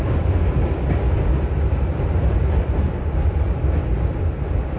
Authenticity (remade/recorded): remade